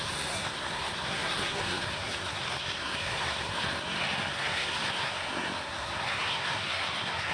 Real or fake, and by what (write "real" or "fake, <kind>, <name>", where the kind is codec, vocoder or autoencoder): fake, codec, SNAC